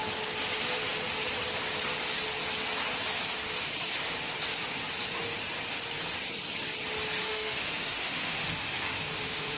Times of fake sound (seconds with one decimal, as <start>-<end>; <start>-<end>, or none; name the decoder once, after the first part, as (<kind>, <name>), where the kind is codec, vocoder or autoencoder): 7.2-9.6 (autoencoder, DAC-VAE)